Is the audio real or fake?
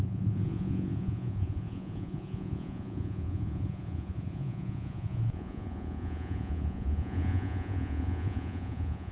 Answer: fake